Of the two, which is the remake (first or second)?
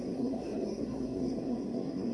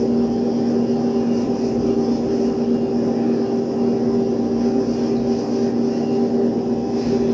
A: first